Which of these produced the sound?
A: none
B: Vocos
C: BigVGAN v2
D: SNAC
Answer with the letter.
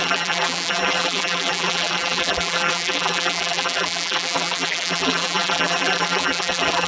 C